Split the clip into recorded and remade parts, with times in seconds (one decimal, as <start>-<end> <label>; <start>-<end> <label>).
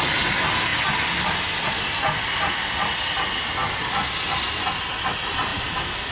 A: 0.0-6.1 recorded